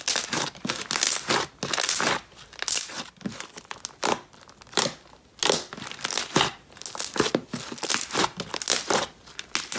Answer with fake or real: real